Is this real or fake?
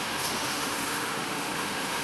fake